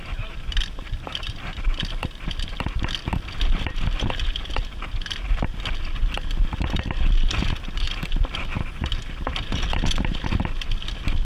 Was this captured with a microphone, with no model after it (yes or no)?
yes